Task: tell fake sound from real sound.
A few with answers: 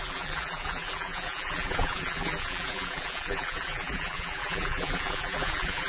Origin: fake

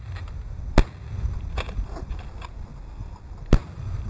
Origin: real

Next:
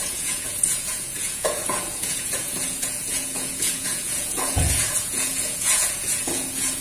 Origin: fake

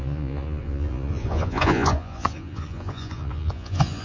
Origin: fake